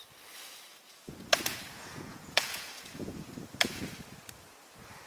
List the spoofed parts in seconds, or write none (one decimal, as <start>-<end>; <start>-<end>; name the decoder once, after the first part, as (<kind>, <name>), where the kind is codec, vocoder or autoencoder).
0.7-3.8 (vocoder, Vocos)